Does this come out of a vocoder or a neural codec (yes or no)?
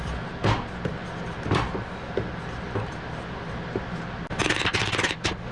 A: no